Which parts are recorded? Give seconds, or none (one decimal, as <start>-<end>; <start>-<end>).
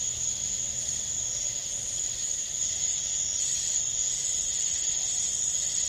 0.0-5.9